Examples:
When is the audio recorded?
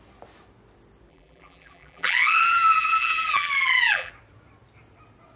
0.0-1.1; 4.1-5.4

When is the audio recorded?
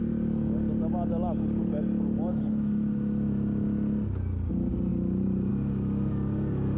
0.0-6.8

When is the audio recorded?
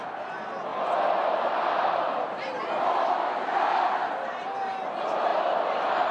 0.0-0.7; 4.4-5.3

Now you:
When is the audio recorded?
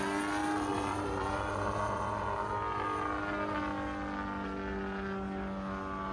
0.0-0.7; 2.5-6.1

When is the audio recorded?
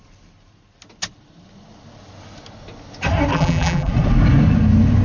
0.0-3.3; 3.9-5.0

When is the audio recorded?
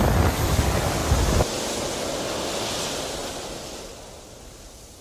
0.0-5.0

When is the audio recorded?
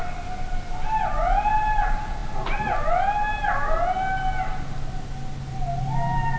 0.0-6.4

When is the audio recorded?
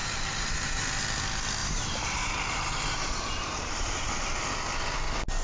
0.8-1.6; 4.4-5.4